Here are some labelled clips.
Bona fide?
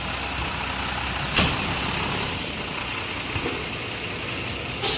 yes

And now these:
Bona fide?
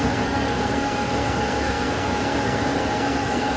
no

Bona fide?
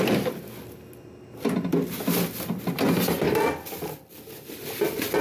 yes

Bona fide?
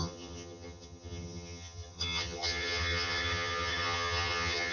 no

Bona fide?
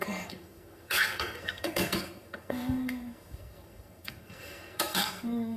no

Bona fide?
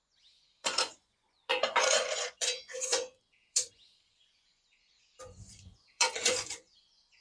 no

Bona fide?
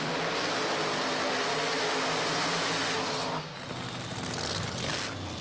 yes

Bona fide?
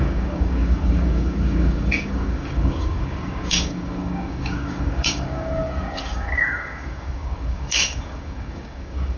no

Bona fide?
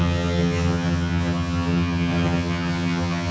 no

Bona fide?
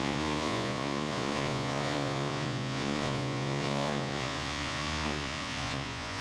no